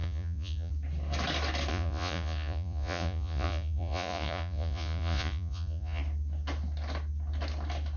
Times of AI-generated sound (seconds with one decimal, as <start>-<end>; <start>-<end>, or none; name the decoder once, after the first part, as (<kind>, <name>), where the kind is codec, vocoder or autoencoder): 0.0-0.7 (vocoder, Vocos); 1.7-6.0